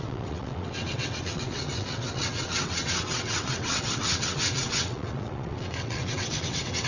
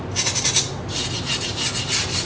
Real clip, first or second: second